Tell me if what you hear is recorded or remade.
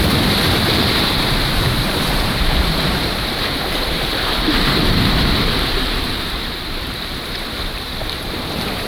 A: remade